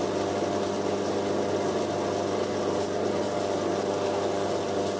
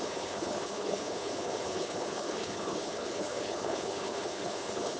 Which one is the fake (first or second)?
second